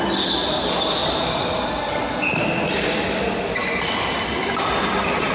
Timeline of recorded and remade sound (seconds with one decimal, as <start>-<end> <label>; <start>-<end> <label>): 0.0-1.0 recorded; 1.0-1.5 remade; 1.5-5.3 recorded